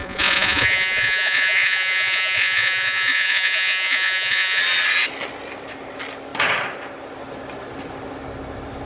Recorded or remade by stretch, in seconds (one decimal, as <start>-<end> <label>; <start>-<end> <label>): 0.0-4.6 remade; 4.6-8.9 recorded